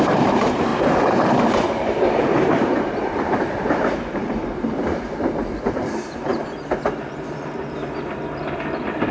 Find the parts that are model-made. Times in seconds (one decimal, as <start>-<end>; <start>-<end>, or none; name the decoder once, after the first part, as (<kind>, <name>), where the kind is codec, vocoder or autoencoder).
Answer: 0.0-6.3 (vocoder, BigVGAN v2)